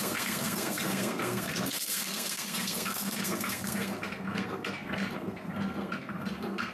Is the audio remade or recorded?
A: remade